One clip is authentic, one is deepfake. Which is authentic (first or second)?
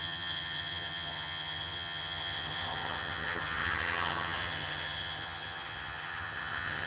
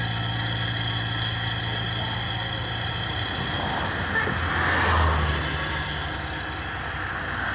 second